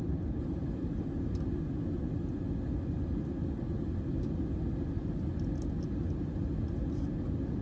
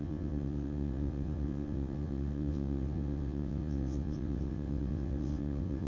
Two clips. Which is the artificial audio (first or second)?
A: second